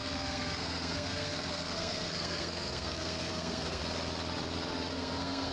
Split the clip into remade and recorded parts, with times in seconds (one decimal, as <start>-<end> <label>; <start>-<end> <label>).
0.0-3.8 remade; 3.8-4.9 recorded; 4.9-5.5 remade